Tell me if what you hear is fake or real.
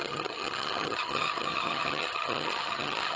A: fake